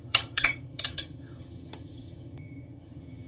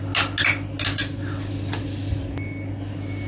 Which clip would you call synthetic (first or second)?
first